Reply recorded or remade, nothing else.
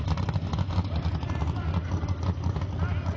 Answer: recorded